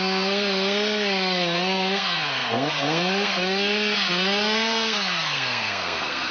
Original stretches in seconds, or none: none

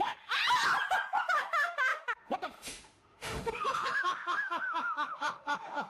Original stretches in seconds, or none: 0.4-1.2

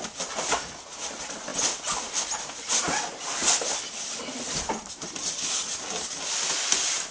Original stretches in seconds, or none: 0.0-7.1

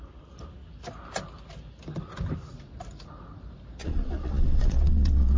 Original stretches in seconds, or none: 0.0-3.8

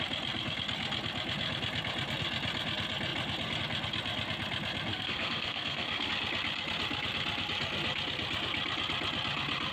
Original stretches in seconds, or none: 0.0-4.9; 6.1-9.7